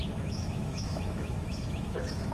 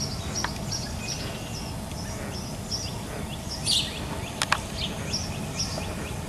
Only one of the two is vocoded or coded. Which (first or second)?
first